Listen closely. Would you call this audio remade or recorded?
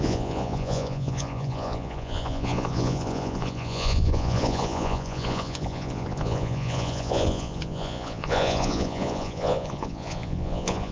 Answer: remade